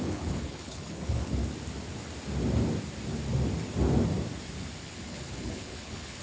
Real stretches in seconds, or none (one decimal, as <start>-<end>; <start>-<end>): 1.4-4.8